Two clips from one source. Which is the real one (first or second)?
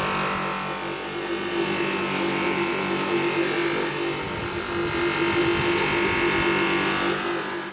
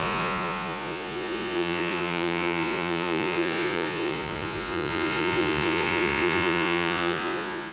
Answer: first